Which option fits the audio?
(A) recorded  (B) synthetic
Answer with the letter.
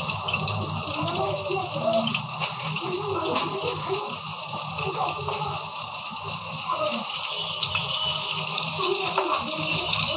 B